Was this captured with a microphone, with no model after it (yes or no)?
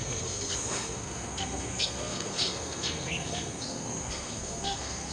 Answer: no